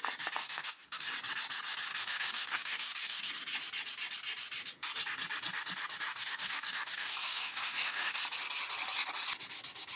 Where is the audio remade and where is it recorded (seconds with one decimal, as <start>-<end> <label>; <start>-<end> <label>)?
0.0-0.4 recorded; 0.4-1.1 remade; 1.1-1.9 recorded; 1.9-3.3 remade; 3.3-6.1 recorded; 6.1-8.2 remade; 8.2-10.0 recorded